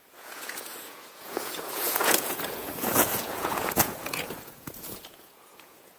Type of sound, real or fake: fake